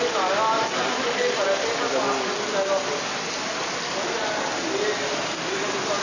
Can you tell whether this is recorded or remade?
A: recorded